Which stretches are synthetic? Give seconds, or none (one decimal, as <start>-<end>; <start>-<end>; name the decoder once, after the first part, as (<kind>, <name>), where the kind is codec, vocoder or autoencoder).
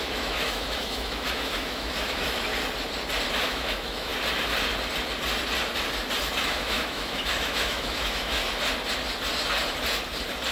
0.0-2.5 (autoencoder, DAC-VAE); 3.3-4.1; 6.4-8.4